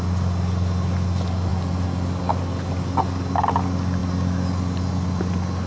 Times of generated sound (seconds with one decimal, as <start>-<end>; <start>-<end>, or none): none